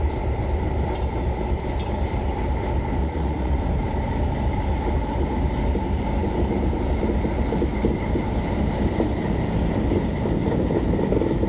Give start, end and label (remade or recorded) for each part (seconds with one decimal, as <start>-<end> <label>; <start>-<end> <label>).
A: 0.0-3.0 recorded; 3.0-3.6 remade; 3.6-11.5 recorded

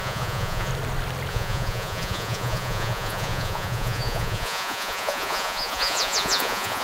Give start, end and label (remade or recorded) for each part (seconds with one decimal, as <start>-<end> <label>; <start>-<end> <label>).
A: 0.0-0.7 remade; 0.7-1.3 recorded; 1.3-6.8 remade